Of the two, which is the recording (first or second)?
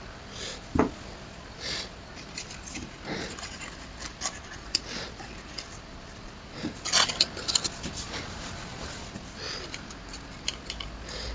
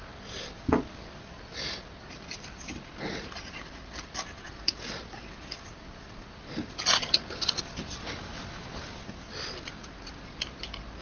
second